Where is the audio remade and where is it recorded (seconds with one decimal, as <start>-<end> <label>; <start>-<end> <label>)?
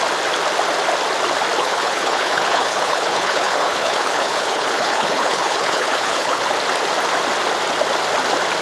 0.0-1.6 recorded; 1.6-6.4 remade; 6.4-8.6 recorded